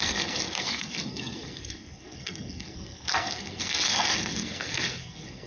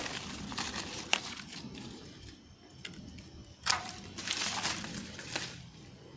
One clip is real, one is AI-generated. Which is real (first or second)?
second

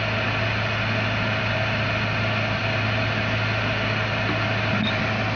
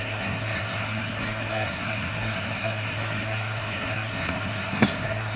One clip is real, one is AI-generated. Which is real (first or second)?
first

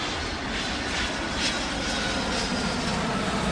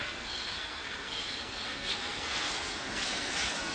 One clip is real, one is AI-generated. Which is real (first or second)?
first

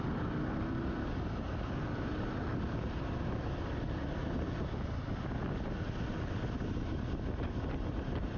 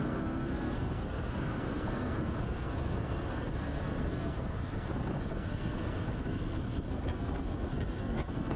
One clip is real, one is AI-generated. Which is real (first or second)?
first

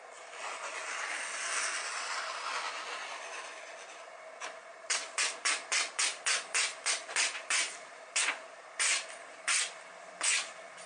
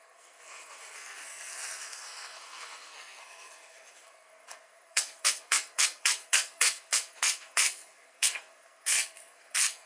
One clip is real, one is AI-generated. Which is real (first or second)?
first